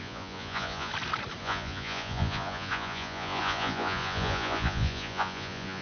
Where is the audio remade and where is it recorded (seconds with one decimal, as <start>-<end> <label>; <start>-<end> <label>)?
0.0-0.9 remade; 0.9-1.4 recorded; 1.4-5.8 remade